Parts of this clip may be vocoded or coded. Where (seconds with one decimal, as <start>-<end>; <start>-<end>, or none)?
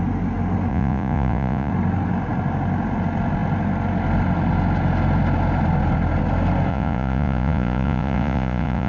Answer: 0.7-1.7; 6.7-8.9